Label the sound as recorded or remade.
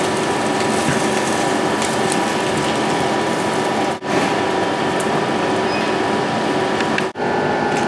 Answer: recorded